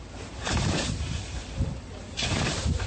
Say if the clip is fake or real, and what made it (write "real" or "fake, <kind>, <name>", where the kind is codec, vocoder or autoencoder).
real